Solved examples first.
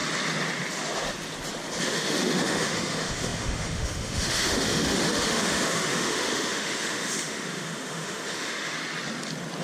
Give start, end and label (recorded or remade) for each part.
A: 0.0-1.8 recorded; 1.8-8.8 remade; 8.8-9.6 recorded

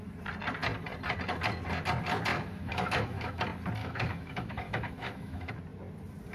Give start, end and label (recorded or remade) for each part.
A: 0.0-2.3 recorded; 2.3-3.4 remade; 3.4-3.8 recorded; 3.8-5.5 remade; 5.5-6.3 recorded

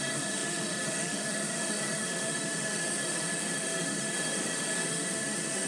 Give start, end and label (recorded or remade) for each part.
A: 0.0-5.7 remade

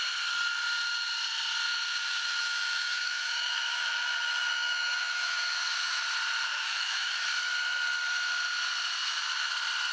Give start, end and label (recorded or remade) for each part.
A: 0.0-1.7 recorded; 1.7-6.0 remade; 6.0-6.5 recorded; 6.5-7.1 remade; 7.1-9.0 recorded; 9.0-9.5 remade; 9.5-9.9 recorded

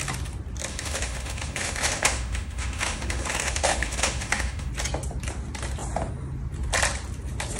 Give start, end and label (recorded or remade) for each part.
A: 0.0-0.7 recorded; 0.7-4.7 remade; 4.7-7.6 recorded